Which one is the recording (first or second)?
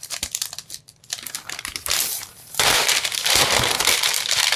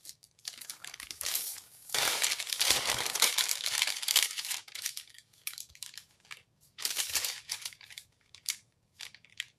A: first